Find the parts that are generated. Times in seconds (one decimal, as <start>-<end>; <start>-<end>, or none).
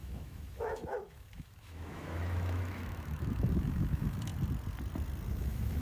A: 0.0-4.3; 5.3-5.8